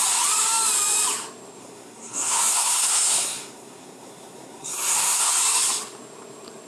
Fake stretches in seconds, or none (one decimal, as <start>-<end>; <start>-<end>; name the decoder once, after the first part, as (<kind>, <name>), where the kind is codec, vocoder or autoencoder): 1.6-5.3 (codec, SNAC)